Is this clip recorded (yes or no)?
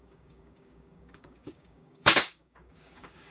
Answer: no